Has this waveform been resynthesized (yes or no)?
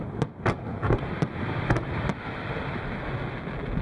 no